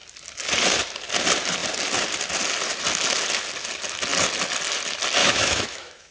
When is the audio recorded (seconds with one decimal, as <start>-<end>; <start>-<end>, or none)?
0.0-5.2